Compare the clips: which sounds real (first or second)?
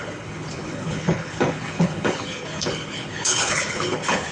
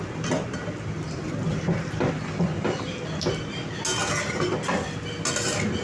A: second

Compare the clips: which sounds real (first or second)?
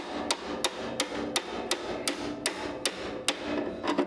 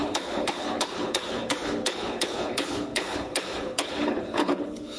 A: first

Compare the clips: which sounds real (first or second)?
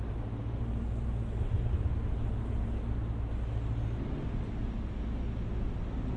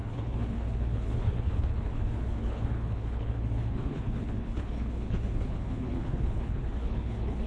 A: first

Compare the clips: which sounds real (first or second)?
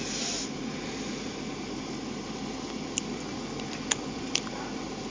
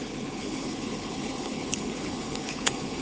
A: first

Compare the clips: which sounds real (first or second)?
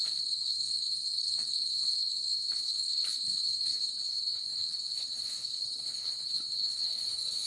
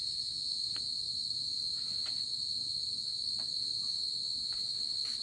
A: second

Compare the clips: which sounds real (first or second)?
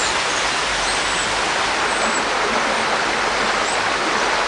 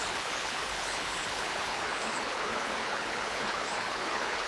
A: first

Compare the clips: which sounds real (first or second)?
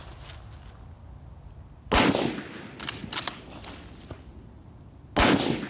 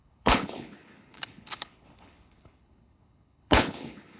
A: first